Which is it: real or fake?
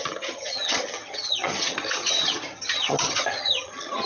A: fake